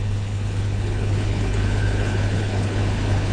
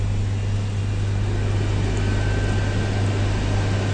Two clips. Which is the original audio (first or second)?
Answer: second